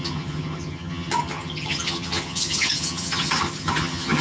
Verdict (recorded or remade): remade